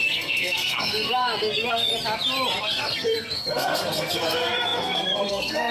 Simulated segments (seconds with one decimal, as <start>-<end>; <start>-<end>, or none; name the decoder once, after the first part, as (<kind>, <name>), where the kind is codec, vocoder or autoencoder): 0.0-1.9 (codec, SNAC); 2.6-5.7